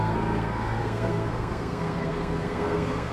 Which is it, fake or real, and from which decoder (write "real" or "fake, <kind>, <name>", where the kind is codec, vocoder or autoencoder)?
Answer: fake, codec, SNAC